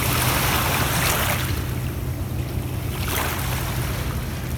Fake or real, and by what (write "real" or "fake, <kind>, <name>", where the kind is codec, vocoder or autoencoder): real